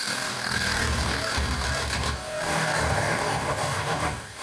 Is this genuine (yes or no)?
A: no